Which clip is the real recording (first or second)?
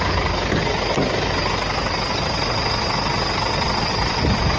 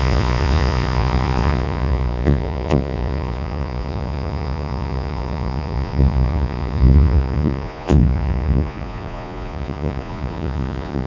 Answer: first